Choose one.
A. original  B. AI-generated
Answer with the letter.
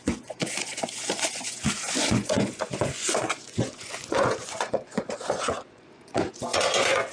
B